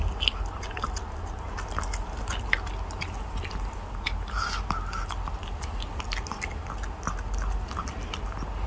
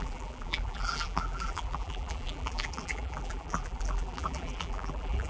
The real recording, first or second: first